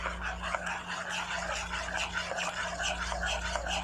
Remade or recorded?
recorded